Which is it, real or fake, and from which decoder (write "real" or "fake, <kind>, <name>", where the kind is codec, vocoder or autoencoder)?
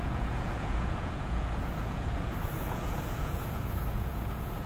fake, vocoder, Vocos